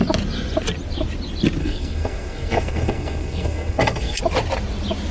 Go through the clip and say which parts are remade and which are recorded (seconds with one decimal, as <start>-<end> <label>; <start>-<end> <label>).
0.0-1.6 recorded; 1.6-4.2 remade; 4.2-5.1 recorded